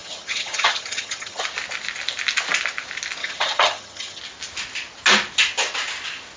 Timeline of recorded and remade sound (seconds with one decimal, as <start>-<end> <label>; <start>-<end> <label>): 0.0-1.4 remade; 1.4-3.2 recorded; 3.2-4.2 remade; 4.2-6.4 recorded